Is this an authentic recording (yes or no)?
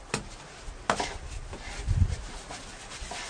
yes